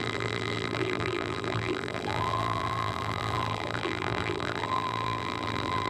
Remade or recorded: remade